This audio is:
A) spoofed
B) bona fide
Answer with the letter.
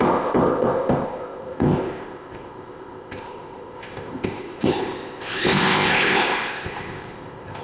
A